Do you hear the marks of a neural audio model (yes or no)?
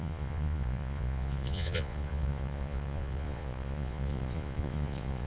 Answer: yes